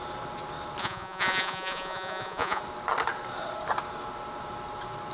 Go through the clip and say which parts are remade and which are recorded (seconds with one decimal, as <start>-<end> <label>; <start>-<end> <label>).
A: 0.0-0.8 recorded; 0.8-2.6 remade; 2.6-5.1 recorded